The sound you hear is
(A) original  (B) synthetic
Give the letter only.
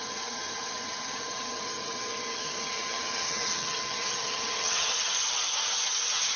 B